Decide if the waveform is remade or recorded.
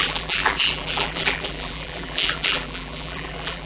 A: remade